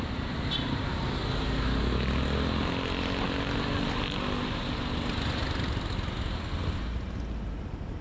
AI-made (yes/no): no